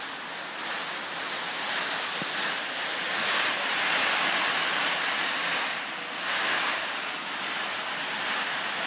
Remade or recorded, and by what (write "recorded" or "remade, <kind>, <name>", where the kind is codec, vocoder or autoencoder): recorded